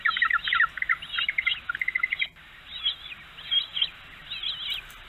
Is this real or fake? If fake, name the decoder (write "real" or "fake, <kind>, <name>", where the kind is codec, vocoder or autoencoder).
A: real